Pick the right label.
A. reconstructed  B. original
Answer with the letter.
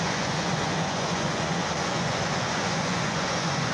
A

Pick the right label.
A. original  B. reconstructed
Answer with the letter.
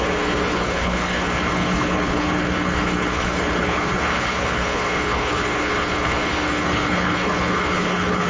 B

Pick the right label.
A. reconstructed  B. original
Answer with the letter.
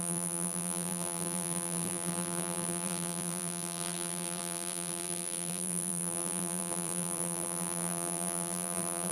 A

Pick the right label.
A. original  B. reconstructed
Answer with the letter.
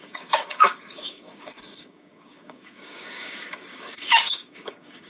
B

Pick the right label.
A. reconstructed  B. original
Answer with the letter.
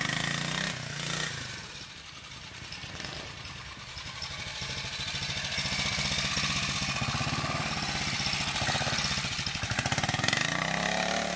B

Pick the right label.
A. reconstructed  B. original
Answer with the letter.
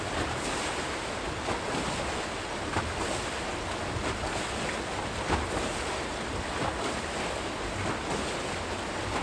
B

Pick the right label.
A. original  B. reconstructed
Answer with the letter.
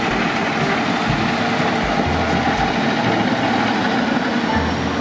A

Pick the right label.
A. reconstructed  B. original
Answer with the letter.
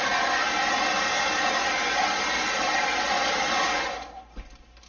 B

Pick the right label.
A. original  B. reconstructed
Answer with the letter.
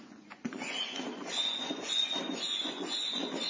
B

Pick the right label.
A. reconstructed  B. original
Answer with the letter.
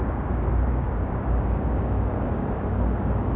A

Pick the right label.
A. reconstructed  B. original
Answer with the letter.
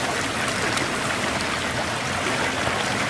B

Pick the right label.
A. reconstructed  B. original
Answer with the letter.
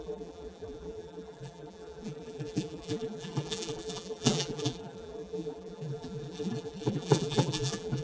A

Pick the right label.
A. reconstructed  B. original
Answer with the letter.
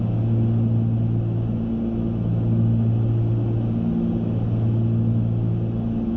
B